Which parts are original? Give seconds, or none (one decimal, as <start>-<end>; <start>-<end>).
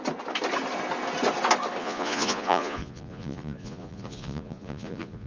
0.0-1.8